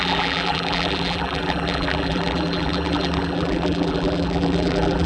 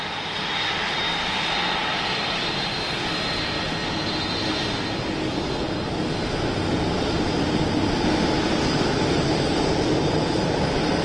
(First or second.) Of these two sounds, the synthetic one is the first